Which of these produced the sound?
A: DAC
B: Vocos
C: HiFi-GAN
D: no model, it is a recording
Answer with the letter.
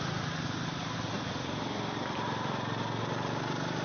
D